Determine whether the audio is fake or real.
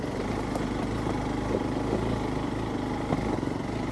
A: real